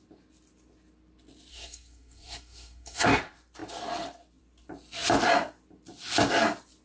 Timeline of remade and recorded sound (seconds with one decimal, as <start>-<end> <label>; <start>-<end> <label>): 0.0-1.5 recorded; 1.5-3.2 remade; 3.2-6.8 recorded